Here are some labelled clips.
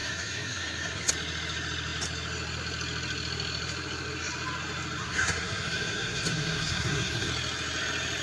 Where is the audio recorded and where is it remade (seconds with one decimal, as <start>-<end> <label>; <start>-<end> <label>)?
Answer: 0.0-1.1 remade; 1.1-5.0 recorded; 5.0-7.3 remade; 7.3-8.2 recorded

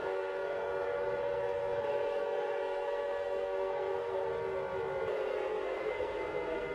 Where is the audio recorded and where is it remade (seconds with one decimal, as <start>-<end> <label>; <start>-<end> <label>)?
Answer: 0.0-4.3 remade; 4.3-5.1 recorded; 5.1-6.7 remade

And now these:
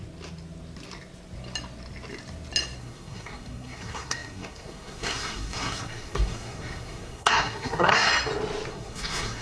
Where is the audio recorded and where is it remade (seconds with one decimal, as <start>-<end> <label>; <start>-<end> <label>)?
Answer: 0.0-2.8 recorded; 2.8-8.1 remade; 8.1-8.7 recorded; 8.7-9.4 remade